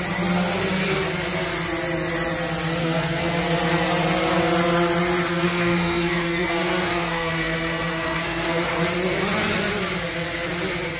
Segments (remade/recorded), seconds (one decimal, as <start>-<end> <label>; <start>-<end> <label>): 0.0-2.8 recorded; 2.8-3.3 remade; 3.3-5.3 recorded; 5.3-8.7 remade; 8.7-11.0 recorded